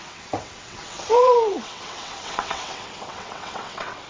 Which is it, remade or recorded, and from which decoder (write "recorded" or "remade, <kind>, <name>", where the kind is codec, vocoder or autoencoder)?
remade, vocoder, WaveNeXt